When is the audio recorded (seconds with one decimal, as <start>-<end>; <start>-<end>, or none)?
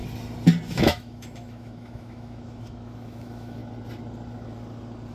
0.0-0.8; 3.6-5.1